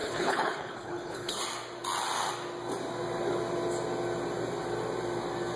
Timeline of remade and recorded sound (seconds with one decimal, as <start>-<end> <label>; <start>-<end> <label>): 0.0-1.4 remade; 1.4-5.6 recorded